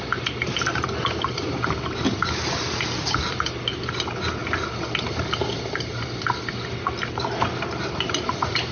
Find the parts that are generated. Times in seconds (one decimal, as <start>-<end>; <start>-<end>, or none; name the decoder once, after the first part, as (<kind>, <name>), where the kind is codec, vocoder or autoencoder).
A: none